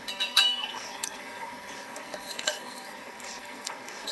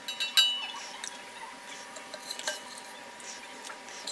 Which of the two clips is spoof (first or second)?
first